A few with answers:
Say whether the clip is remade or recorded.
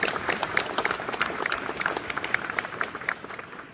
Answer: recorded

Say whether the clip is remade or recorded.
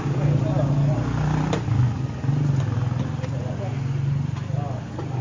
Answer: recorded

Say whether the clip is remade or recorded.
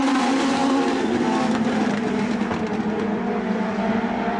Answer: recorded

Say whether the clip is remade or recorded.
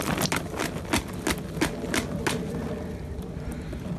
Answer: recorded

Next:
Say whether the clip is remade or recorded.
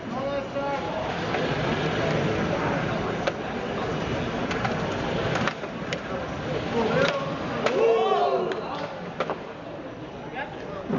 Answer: recorded